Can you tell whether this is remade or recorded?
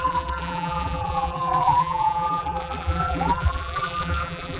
remade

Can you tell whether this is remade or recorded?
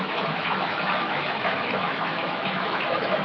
remade